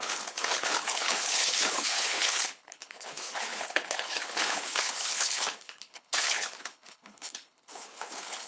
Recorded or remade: remade